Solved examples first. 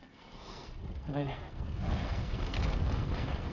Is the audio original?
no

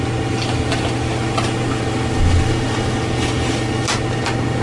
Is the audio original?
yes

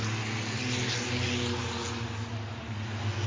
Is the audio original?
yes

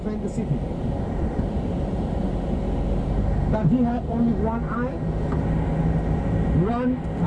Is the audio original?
yes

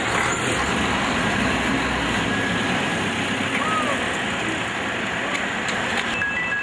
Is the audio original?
yes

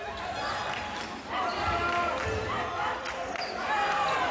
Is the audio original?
yes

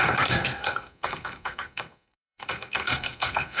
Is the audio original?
no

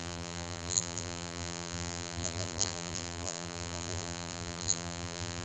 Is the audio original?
no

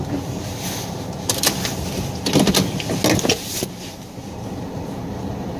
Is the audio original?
yes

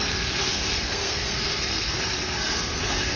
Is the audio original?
no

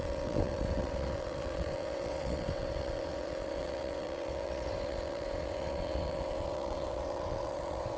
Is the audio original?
no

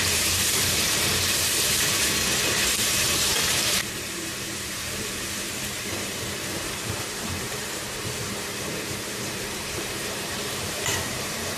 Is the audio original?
no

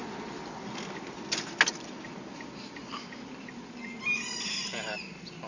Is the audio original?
yes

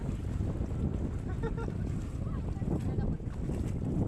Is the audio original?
yes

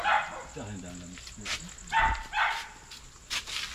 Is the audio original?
yes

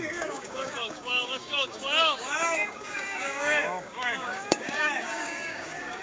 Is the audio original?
no